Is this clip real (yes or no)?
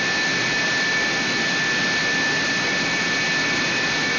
yes